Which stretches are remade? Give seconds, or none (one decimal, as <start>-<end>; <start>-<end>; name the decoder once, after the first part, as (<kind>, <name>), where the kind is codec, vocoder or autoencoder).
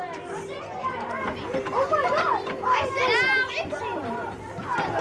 none